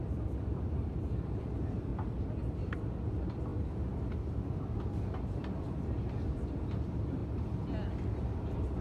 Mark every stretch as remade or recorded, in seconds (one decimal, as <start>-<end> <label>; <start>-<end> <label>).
0.0-1.9 remade; 1.9-3.1 recorded; 3.1-3.5 remade; 3.5-6.7 recorded; 6.7-7.2 remade; 7.2-8.8 recorded